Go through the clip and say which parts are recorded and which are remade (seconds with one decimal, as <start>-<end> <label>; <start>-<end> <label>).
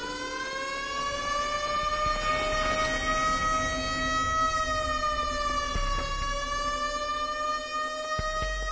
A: 0.0-8.7 recorded